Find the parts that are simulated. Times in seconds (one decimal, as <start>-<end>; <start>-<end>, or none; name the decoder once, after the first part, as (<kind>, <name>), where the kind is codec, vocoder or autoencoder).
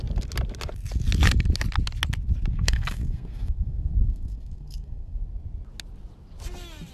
2.5-5.2 (codec, SNAC)